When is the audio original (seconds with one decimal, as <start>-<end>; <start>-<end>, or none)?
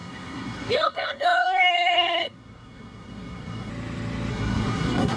3.7-4.3